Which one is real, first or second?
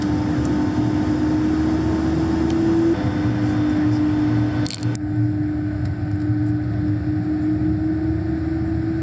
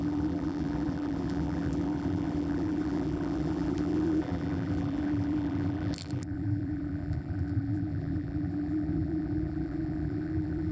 first